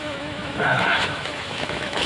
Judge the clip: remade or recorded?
remade